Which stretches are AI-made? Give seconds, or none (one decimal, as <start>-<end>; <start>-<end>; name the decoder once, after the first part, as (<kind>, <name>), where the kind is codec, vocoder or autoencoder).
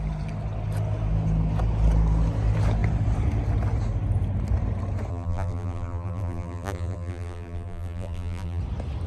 5.1-8.6 (vocoder, BigVGAN v2)